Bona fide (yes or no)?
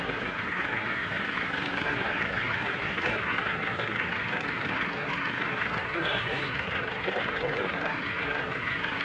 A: no